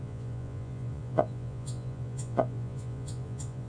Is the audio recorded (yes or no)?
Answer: no